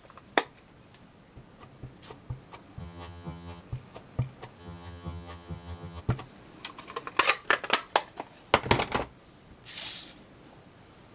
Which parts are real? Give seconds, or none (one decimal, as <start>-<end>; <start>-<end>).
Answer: 0.0-2.8; 3.6-4.6; 6.0-11.1

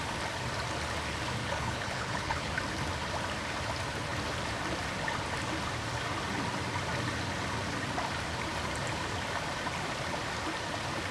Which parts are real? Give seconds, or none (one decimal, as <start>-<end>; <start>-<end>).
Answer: 0.0-1.4; 2.5-11.1

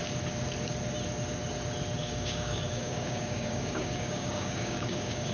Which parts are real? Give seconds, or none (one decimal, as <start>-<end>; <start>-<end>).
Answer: 0.0-2.0

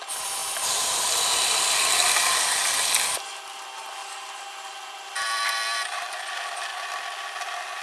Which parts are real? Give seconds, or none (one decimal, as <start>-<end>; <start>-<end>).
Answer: 0.0-7.8

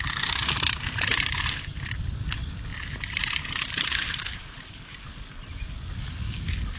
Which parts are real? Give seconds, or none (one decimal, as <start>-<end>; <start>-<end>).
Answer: 0.0-0.4; 1.9-2.7; 4.8-6.8